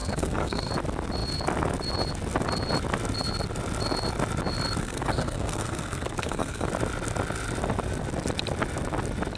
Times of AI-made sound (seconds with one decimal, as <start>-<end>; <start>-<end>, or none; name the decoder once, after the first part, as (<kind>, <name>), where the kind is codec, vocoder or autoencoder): 0.0-0.7 (codec, SNAC); 4.8-6.7